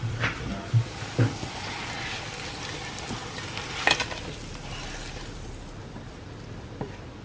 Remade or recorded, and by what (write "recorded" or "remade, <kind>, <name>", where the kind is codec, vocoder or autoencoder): recorded